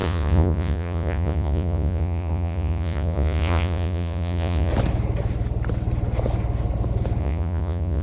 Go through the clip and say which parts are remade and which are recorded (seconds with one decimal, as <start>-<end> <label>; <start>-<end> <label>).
0.0-4.7 remade; 4.7-7.2 recorded; 7.2-8.0 remade